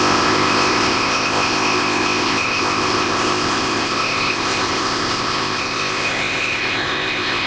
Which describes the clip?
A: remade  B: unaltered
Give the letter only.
A